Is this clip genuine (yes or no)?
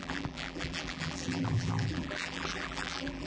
no